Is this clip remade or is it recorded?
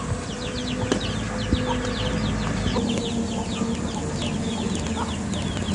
recorded